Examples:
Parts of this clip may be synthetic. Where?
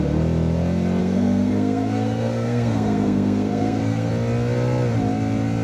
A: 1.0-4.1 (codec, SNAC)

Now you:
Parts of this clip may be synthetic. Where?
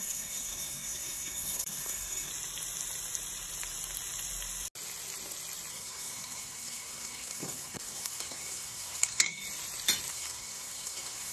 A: 0.0-2.3 (codec, SNAC); 5.7-9.4; 10.1-11.3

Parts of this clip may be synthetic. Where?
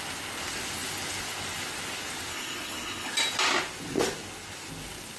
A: 2.3-3.1 (codec, HILCodec)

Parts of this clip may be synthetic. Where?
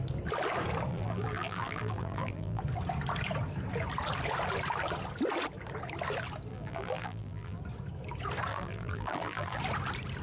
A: 0.9-2.6 (vocoder, BigVGAN v2); 6.5-7.6; 8.5-9.6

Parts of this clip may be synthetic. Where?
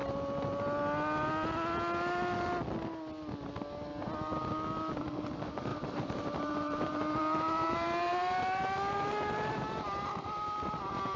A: 5.0-11.2 (vocoder, BigVGAN v2)